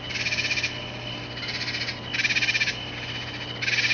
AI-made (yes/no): no